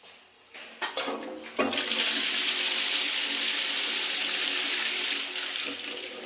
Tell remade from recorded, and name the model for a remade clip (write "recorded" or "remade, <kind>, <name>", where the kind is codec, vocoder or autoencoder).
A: recorded